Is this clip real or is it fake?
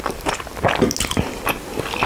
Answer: real